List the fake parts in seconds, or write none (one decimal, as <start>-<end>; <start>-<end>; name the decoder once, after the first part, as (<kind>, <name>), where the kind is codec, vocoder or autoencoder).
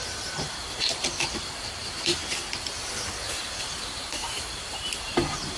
0.0-2.2 (vocoder, BigVGAN v2); 3.3-5.6